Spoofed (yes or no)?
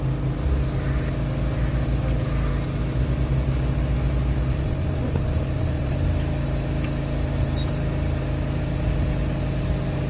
no